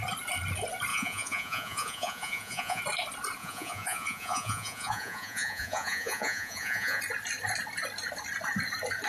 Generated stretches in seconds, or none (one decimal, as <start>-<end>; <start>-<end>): 0.9-2.8; 3.4-7.0